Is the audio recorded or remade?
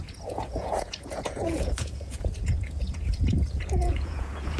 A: remade